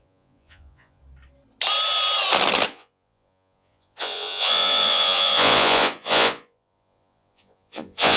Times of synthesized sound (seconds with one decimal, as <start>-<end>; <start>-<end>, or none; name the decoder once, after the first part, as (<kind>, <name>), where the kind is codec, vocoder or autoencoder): 0.0-1.0 (vocoder, Vocos); 2.7-8.2